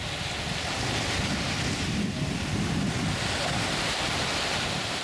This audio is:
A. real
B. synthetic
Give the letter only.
A